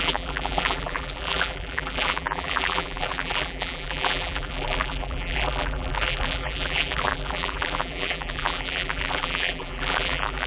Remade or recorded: remade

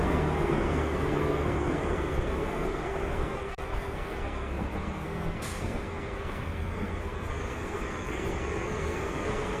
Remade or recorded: remade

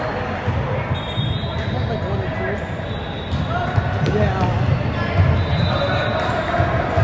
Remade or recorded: recorded